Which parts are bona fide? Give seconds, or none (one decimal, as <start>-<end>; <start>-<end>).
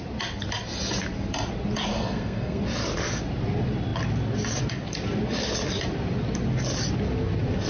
0.0-1.9; 2.6-7.7